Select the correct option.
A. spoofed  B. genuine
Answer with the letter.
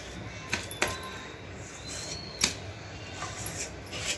B